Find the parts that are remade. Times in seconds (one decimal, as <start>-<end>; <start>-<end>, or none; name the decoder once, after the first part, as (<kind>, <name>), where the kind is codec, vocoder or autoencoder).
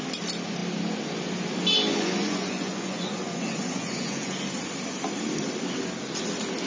1.9-4.3 (vocoder, Vocos)